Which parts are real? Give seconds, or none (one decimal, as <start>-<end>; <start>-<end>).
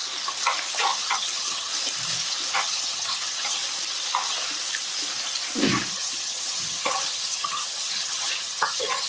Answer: 0.0-1.0; 1.7-2.5; 3.6-5.9